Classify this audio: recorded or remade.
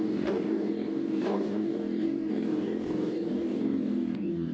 remade